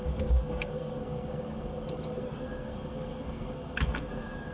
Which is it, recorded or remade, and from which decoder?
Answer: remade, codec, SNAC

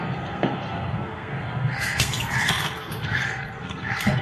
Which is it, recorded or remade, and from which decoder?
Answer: remade, codec, SNAC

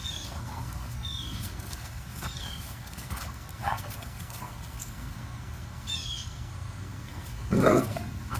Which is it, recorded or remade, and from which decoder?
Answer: remade, codec, SNAC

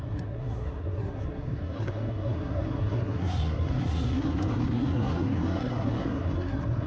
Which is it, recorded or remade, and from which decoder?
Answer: remade, codec, SNAC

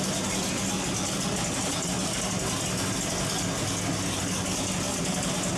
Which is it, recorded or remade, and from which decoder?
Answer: recorded